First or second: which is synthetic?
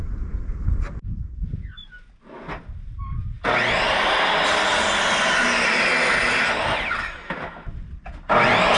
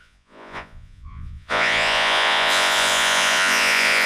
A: second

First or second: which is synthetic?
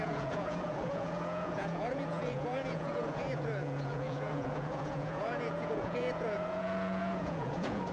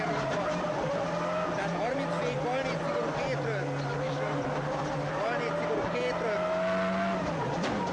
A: first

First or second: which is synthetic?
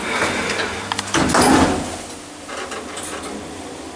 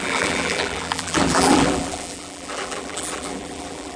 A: second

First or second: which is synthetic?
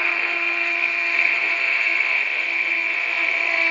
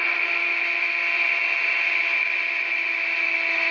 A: first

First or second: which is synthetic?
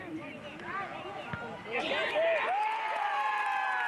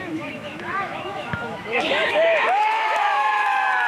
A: second